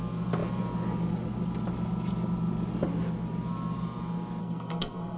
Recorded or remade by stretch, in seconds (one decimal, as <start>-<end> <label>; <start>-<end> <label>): 0.0-4.4 recorded; 4.4-5.2 remade